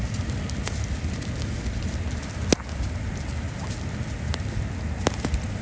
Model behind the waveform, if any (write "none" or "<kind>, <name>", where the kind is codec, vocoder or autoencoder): none